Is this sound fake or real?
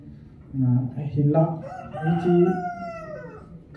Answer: real